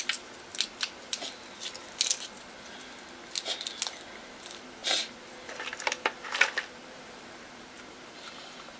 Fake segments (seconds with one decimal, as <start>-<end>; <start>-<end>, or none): none